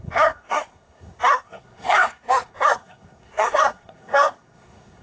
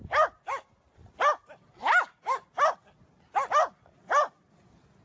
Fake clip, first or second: first